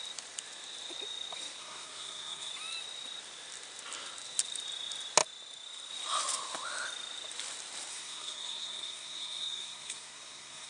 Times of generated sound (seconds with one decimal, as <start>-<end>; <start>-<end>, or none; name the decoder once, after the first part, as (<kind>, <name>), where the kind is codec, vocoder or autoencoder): 1.6-2.5 (codec, SNAC); 7.9-10.7